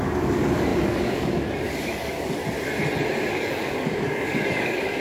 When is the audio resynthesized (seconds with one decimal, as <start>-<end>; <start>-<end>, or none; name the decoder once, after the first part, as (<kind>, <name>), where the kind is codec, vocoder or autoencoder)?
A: 0.0-2.4 (codec, DAC); 3.3-5.0